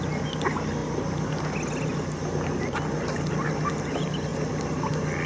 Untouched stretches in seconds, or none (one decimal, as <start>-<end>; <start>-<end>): 0.0-5.3

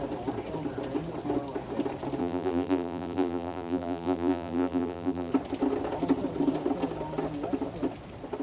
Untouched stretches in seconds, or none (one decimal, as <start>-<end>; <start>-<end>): 0.0-2.2; 5.3-8.4

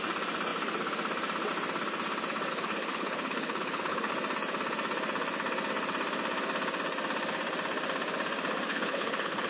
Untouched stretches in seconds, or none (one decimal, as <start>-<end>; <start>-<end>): 0.0-2.5; 4.1-8.7

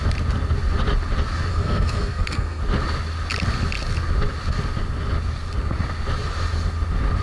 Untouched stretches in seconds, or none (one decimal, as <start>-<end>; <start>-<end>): 0.0-1.5; 2.6-7.2

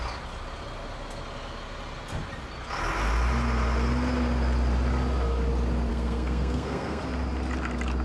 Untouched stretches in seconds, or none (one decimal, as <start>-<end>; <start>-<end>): 0.0-5.9; 7.0-8.0

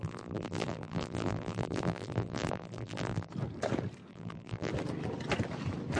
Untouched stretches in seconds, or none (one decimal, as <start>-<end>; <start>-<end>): 3.3-4.1; 4.7-6.0

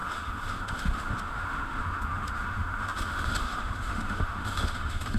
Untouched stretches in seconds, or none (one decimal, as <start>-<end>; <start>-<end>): none